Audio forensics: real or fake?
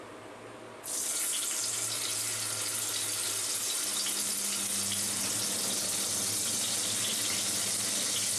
real